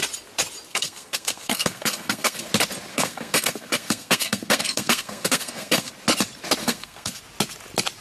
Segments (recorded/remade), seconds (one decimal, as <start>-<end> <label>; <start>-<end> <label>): 0.0-0.7 recorded; 0.7-2.5 remade; 2.5-2.9 recorded; 2.9-5.9 remade; 5.9-6.6 recorded; 6.6-7.2 remade; 7.2-8.0 recorded